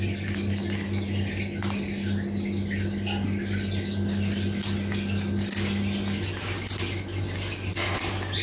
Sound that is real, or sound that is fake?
real